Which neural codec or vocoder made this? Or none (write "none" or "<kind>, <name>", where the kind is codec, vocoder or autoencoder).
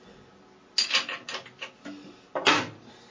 none